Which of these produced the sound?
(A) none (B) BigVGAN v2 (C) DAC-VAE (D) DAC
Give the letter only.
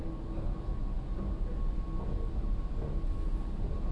A